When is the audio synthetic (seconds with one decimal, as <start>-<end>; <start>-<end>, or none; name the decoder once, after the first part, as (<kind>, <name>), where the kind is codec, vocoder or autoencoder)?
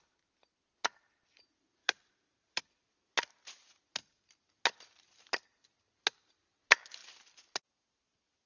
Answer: 1.8-2.6 (vocoder, BigVGAN v2)